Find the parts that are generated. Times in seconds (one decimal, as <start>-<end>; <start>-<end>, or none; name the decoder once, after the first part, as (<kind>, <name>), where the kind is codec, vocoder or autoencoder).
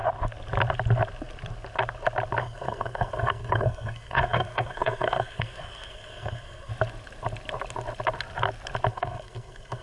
2.4-6.7 (codec, SNAC); 8.9-9.8